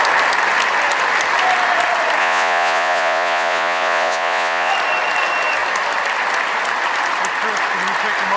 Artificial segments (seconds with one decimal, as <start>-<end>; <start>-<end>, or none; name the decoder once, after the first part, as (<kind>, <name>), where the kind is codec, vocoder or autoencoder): 2.2-4.7 (vocoder, Vocos)